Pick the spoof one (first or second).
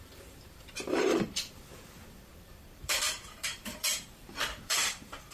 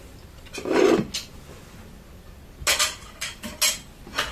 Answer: first